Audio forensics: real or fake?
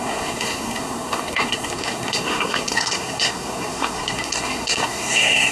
fake